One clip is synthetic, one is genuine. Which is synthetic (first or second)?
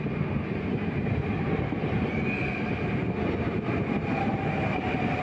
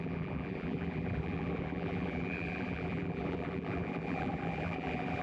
second